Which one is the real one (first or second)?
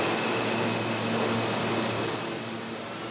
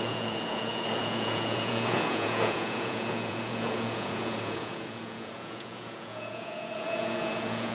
first